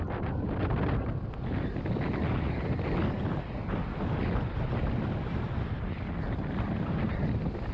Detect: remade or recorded recorded